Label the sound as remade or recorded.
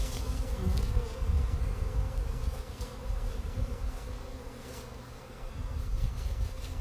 remade